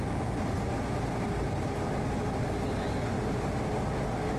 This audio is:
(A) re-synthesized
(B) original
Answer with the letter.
B